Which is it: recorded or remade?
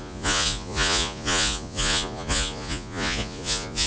remade